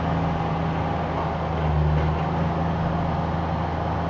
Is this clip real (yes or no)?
yes